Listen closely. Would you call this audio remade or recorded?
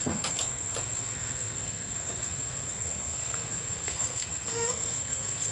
remade